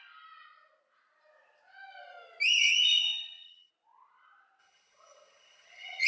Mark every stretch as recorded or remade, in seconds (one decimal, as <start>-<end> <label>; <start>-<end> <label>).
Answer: 0.0-2.6 recorded; 2.6-3.7 remade; 3.7-4.6 recorded; 4.6-6.1 remade